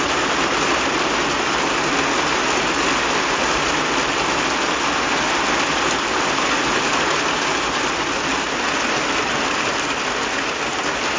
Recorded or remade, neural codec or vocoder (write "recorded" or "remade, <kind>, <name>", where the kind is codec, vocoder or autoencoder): recorded